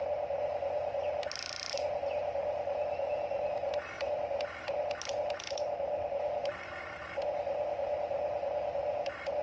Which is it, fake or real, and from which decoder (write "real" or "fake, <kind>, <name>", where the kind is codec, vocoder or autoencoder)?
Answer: real